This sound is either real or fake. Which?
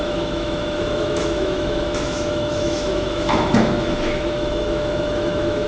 fake